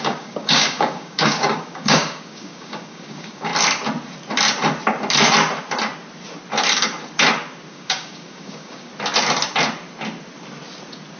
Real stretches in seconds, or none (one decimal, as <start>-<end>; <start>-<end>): 3.5-7.7; 8.9-11.2